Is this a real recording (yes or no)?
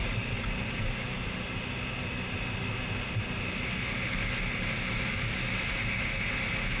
yes